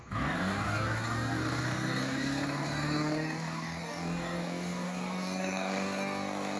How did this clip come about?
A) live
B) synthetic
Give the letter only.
B